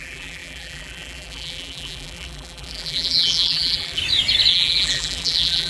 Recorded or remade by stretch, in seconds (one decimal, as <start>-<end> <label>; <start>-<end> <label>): 0.0-4.0 remade; 4.0-4.5 recorded; 4.5-5.7 remade